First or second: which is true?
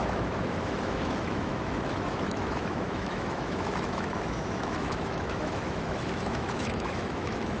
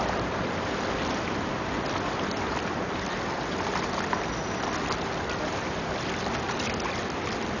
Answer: second